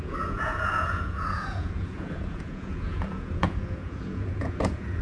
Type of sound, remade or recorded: remade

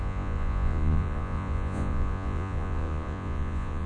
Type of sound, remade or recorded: remade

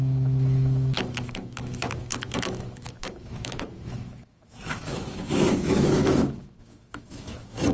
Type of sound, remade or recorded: remade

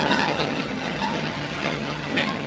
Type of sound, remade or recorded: remade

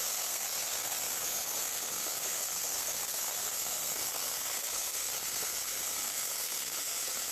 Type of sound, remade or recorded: remade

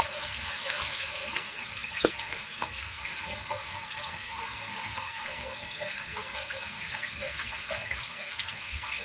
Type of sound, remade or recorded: remade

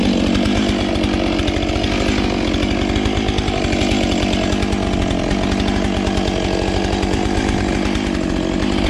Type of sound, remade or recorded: recorded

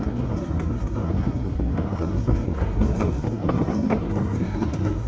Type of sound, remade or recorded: remade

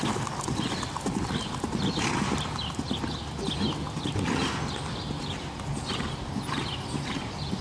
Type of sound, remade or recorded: recorded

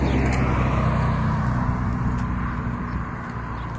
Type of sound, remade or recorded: recorded